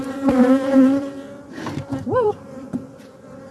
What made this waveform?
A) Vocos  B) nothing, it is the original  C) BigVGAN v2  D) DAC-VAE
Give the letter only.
C